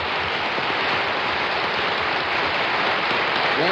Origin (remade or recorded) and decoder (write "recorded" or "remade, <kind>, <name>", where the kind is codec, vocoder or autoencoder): recorded